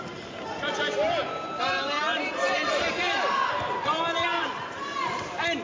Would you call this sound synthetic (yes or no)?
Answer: yes